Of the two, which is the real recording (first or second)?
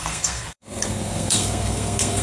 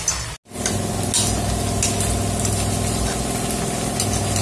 second